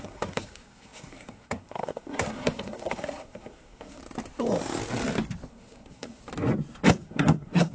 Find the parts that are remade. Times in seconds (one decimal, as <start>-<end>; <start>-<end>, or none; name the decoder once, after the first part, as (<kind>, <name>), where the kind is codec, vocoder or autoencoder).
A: 0.0-4.0 (codec, SNAC); 5.5-6.2; 6.9-7.7